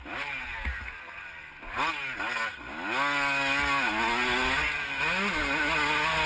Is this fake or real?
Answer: real